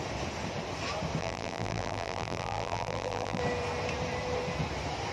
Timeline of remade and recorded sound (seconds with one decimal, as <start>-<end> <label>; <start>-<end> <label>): 0.0-1.2 recorded; 1.2-3.4 remade; 3.4-5.1 recorded